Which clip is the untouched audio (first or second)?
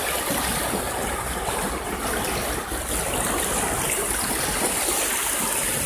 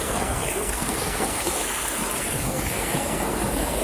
first